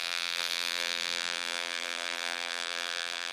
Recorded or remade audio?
remade